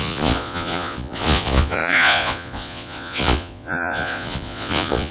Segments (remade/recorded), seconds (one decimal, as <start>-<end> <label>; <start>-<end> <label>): 0.0-5.1 remade